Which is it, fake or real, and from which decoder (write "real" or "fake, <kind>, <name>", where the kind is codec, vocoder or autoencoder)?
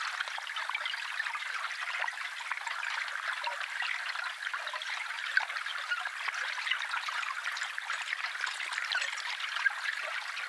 real